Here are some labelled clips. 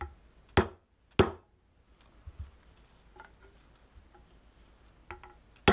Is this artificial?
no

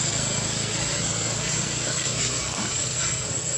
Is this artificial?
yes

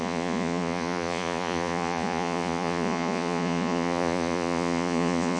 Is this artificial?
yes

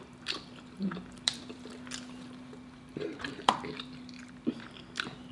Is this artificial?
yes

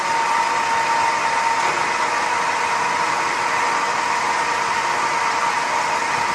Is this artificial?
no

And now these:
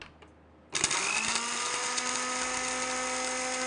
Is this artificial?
no